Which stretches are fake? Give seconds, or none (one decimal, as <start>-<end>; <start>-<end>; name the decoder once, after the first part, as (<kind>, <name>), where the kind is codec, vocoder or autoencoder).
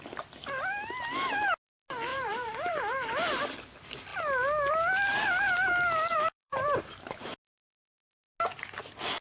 2.1-3.4 (vocoder, BigVGAN v2); 6.1-7.3